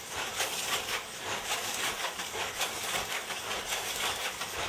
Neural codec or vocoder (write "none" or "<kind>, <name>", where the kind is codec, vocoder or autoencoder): codec, DAC